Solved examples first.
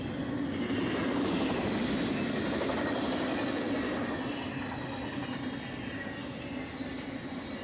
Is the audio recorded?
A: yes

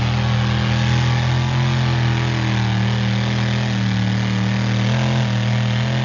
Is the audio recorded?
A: yes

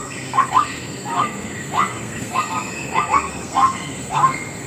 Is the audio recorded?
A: no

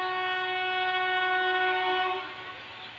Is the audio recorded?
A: yes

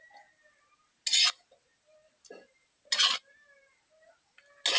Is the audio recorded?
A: yes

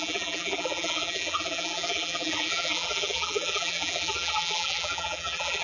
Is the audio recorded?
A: no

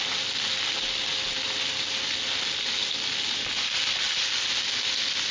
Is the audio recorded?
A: yes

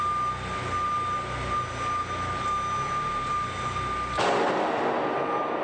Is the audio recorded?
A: yes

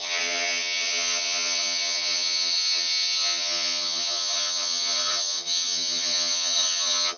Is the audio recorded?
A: no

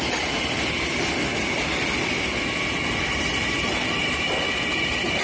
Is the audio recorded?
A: yes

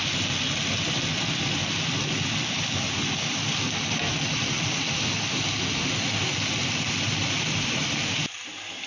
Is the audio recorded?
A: yes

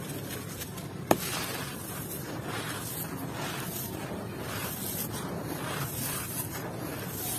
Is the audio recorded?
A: yes